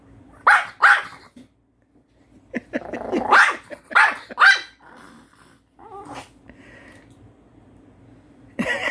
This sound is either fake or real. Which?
real